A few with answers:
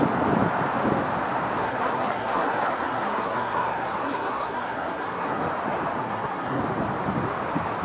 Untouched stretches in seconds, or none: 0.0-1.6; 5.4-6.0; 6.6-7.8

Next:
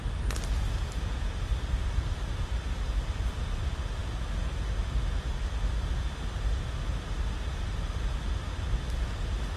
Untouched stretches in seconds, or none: 0.0-1.8; 3.4-9.6

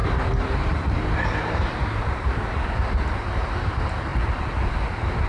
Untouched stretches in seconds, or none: 3.2-4.1

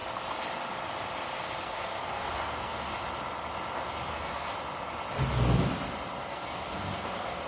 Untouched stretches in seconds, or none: 0.0-1.6; 2.9-4.1; 4.5-6.2

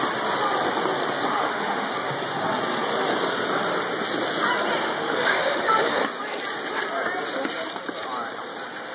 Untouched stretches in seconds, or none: 0.0-1.3; 1.9-4.8; 6.0-8.9

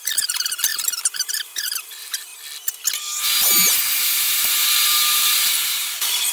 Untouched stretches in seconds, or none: 2.3-4.0